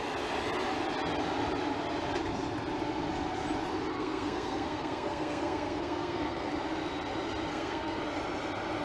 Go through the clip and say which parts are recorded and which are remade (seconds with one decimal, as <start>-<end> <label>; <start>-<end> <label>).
0.0-3.9 recorded; 3.9-6.5 remade; 6.5-7.5 recorded; 7.5-8.0 remade; 8.0-8.8 recorded